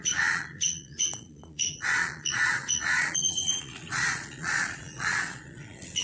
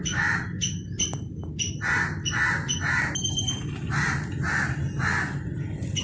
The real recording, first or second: second